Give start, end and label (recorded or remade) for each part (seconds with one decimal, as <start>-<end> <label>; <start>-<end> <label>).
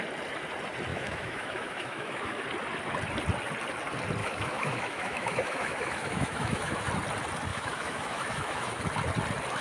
0.0-0.9 recorded; 0.9-2.4 remade; 2.4-4.2 recorded; 4.2-6.9 remade; 6.9-7.5 recorded; 7.5-8.8 remade; 8.8-9.6 recorded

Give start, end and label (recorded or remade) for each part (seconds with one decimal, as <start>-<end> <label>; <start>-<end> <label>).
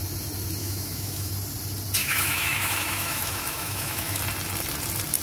0.0-0.6 recorded; 0.6-1.3 remade; 1.3-2.0 recorded; 2.0-4.2 remade; 4.2-5.2 recorded